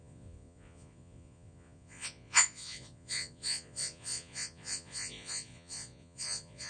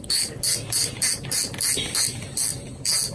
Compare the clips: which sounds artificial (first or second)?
first